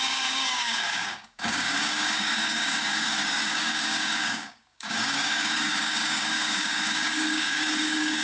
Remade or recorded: remade